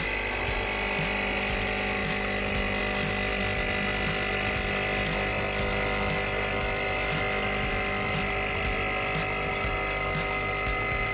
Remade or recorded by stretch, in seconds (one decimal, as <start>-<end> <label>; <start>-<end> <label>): 0.0-11.1 recorded